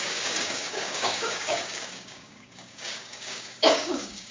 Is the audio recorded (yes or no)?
no